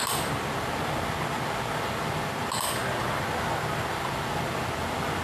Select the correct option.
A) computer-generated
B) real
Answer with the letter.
B